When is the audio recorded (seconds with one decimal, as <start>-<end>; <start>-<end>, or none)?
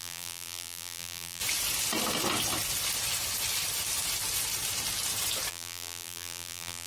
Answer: 1.4-5.5